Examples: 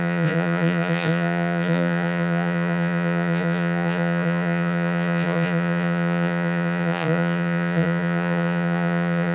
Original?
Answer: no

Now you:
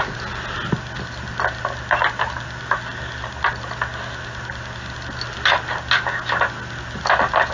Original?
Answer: yes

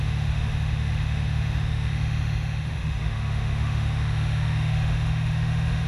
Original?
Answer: no